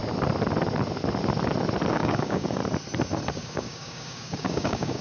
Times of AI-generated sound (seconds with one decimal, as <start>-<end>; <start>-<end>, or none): 1.9-2.6; 3.3-5.0